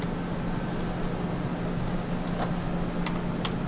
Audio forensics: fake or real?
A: real